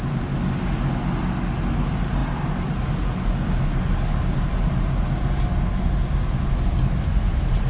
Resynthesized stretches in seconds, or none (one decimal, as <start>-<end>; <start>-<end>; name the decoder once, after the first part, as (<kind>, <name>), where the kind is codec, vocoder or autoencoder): none